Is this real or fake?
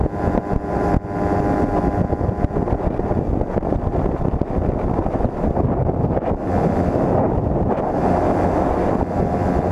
real